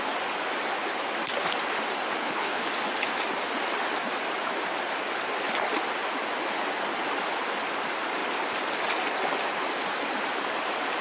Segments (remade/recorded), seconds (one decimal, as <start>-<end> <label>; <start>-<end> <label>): 0.0-2.2 recorded; 2.2-2.7 remade; 2.7-11.0 recorded